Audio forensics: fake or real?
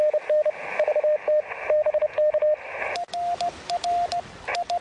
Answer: real